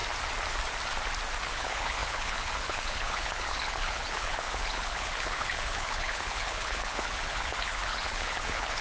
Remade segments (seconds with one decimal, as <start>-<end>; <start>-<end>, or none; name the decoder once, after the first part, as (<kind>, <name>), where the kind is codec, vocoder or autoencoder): 1.4-8.8 (codec, HILCodec)